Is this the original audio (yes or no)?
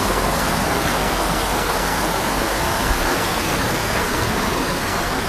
no